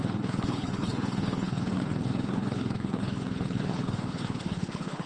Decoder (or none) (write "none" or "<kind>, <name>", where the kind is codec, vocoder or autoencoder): codec, HILCodec